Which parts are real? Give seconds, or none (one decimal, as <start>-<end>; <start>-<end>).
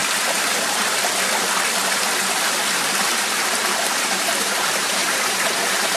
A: 0.0-3.6